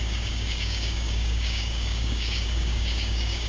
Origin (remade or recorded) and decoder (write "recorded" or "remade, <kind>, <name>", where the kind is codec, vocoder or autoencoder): remade, codec, DAC